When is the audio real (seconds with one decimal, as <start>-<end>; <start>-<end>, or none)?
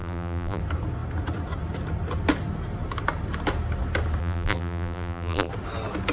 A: 0.6-4.2; 5.5-6.1